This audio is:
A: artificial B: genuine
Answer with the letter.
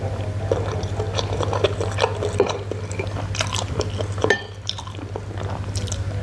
A